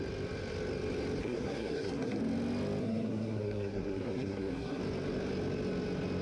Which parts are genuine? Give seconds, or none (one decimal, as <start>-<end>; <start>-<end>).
0.0-1.2; 2.2-2.8; 4.8-6.2